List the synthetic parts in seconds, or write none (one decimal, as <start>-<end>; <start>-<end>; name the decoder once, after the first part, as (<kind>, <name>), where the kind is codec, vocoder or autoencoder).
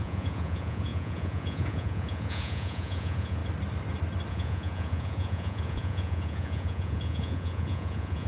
0.0-3.4 (vocoder, Vocos); 4.3-8.3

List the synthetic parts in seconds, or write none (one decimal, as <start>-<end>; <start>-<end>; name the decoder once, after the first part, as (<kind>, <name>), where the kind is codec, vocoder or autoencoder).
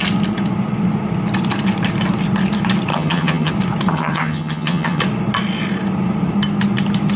2.9-3.5 (vocoder, HiFi-GAN); 3.9-5.0